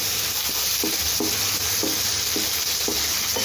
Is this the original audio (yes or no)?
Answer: yes